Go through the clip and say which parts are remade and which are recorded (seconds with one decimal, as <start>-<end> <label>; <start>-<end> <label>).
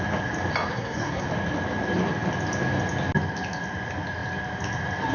0.0-0.7 recorded; 0.7-1.2 remade; 1.2-5.1 recorded